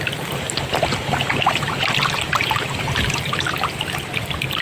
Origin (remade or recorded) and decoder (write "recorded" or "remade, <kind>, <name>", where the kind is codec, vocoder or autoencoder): recorded